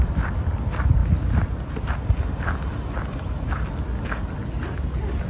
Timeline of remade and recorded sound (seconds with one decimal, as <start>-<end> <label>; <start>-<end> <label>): 0.0-5.3 recorded